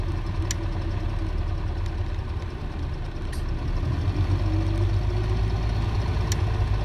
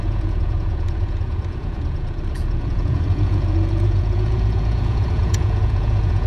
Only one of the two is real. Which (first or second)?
first